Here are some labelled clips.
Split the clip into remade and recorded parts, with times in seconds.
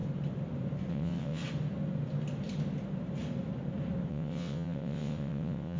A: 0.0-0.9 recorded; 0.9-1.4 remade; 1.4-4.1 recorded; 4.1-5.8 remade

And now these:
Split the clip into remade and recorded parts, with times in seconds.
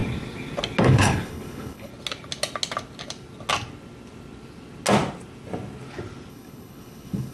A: 0.0-0.8 recorded; 0.8-1.9 remade; 1.9-6.3 recorded; 6.3-7.3 remade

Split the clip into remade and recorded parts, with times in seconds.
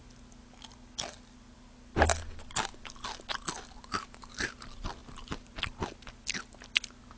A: 0.0-7.2 recorded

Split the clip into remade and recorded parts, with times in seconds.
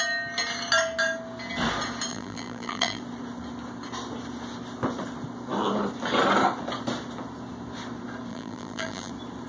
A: 0.0-2.1 recorded; 2.1-3.0 remade; 3.0-8.3 recorded; 8.3-9.1 remade; 9.1-9.5 recorded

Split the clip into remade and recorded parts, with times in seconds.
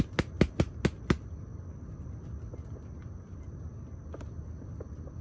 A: 0.0-5.2 recorded